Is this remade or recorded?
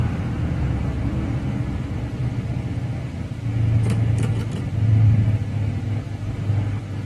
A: recorded